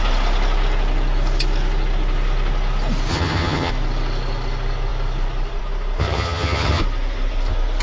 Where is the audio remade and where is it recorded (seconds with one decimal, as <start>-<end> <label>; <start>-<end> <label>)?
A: 0.0-3.1 recorded; 3.1-3.7 remade; 3.7-6.0 recorded; 6.0-6.8 remade; 6.8-7.8 recorded